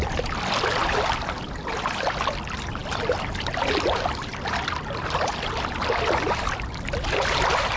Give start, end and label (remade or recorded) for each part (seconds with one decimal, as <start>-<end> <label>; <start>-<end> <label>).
0.0-7.8 recorded